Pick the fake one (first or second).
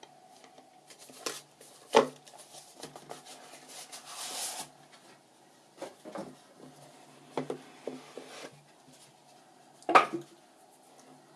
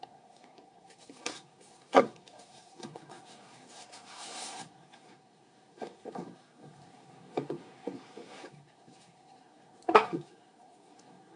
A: second